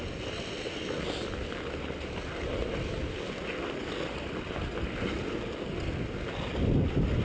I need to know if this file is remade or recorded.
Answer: recorded